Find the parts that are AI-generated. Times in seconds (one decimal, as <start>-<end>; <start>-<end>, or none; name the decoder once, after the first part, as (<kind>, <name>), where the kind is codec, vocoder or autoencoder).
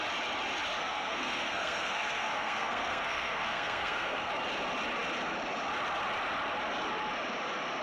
0.8-4.3 (codec, SNAC)